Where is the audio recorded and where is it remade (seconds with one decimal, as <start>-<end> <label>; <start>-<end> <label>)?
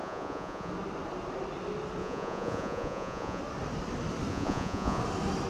0.0-0.7 remade; 0.7-2.0 recorded; 2.0-3.4 remade; 3.4-4.3 recorded; 4.3-5.0 remade; 5.0-5.5 recorded